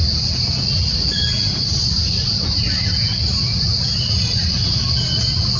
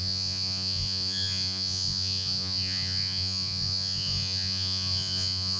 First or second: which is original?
first